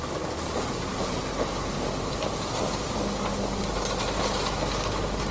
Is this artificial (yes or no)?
no